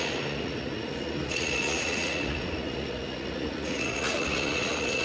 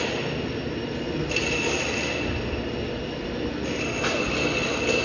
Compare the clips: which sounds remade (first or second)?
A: first